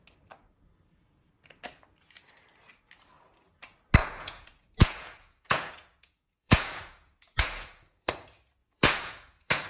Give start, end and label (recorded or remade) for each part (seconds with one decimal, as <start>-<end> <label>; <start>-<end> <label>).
0.0-4.0 recorded; 4.0-8.1 remade; 8.1-8.6 recorded; 8.6-9.7 remade